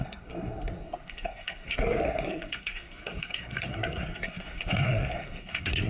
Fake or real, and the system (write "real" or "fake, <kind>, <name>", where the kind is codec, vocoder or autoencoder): fake, codec, SNAC